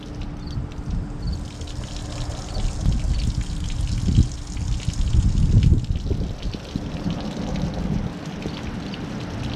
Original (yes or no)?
yes